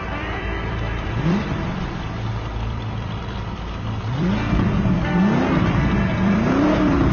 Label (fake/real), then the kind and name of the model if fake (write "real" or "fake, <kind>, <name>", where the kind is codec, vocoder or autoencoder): fake, vocoder, BigVGAN v2